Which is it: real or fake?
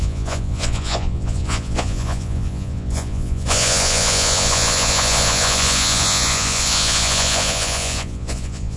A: fake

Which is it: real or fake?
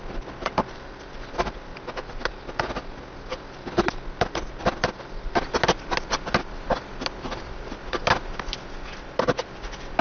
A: real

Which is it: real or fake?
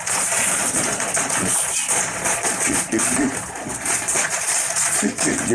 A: fake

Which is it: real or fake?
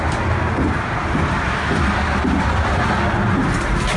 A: real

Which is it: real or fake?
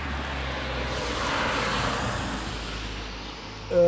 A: real